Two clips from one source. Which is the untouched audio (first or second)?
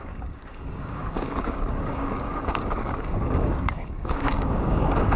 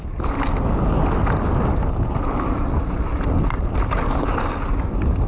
second